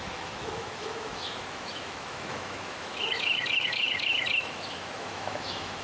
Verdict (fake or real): fake